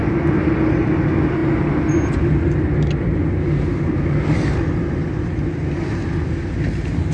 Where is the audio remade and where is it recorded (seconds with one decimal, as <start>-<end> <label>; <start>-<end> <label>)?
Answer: 0.0-7.1 recorded